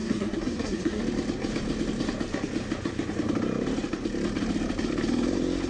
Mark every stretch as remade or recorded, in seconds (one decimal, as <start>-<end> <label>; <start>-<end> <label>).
0.0-1.0 remade; 1.0-5.7 recorded